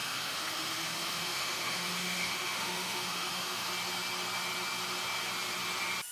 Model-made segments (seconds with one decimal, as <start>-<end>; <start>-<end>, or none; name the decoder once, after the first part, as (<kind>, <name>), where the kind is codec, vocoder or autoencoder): 0.0-3.7 (autoencoder, DAC-VAE)

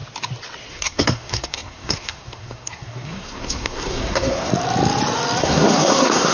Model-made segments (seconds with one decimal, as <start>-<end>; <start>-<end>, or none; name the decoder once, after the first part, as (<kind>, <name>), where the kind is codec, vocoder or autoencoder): 0.7-4.5 (codec, SNAC); 5.4-6.3

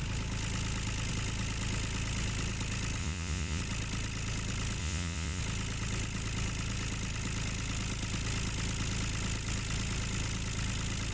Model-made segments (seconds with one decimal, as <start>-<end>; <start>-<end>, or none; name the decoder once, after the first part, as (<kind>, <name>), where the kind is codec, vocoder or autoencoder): 3.0-3.6 (vocoder, Vocos); 4.8-5.4

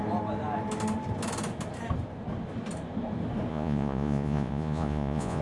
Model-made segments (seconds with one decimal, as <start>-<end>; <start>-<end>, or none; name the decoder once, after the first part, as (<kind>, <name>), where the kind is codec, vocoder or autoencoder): 3.5-5.4 (vocoder, Vocos)